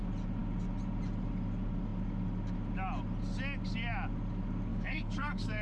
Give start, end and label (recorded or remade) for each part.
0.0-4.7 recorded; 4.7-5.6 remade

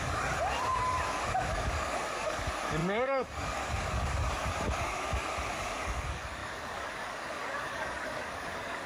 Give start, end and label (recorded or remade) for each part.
0.0-8.9 remade

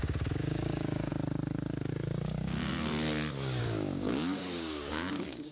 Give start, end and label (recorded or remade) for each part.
0.0-1.1 remade; 1.1-1.9 recorded; 1.9-2.7 remade; 2.7-3.6 recorded; 3.6-5.5 remade

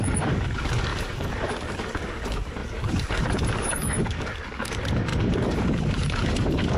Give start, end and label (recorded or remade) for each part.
0.0-6.8 remade

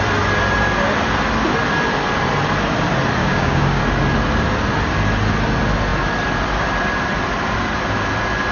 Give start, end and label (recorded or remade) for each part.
0.0-3.2 recorded; 3.2-3.8 remade; 3.8-8.5 recorded

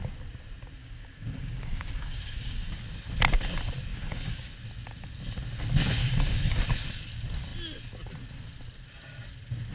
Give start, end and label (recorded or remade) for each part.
0.0-0.8 recorded; 0.8-2.8 remade; 2.8-3.9 recorded; 3.9-4.5 remade; 4.5-6.0 recorded; 6.0-6.6 remade; 6.6-9.7 recorded